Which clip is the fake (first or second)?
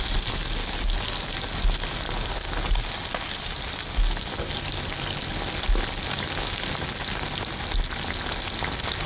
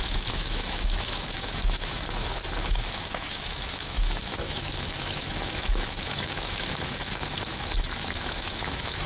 second